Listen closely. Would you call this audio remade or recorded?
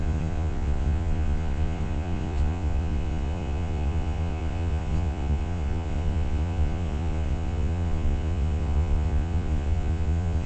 remade